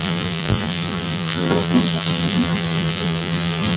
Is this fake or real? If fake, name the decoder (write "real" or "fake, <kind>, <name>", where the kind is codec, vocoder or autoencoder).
fake, vocoder, BigVGAN v2